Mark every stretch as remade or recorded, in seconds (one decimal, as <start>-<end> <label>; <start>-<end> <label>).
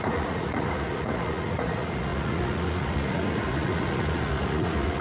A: 0.0-5.0 remade